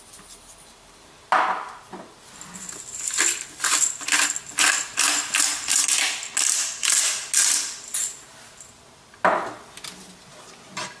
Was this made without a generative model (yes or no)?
yes